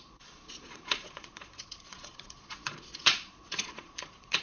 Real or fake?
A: fake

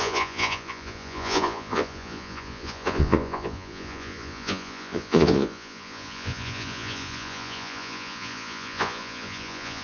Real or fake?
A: fake